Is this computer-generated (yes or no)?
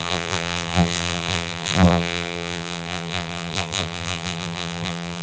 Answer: yes